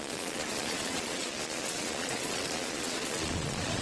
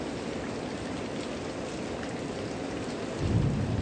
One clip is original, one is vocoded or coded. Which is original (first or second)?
second